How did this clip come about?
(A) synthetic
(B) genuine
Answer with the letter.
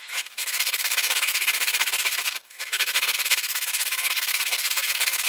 A